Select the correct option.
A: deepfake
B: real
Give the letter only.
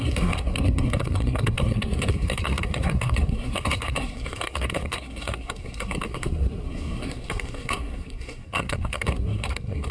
A